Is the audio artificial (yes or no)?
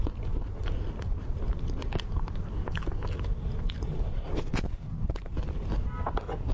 no